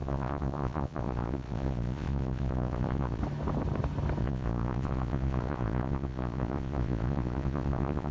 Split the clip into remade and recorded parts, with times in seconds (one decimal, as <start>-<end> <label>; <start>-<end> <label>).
0.0-3.2 remade; 3.2-4.2 recorded; 4.2-8.1 remade